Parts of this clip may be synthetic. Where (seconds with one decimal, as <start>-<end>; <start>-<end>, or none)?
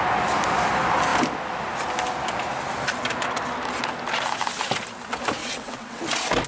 5.4-6.0